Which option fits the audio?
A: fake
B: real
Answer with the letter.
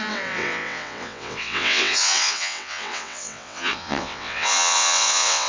A